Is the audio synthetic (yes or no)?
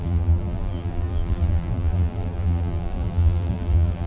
yes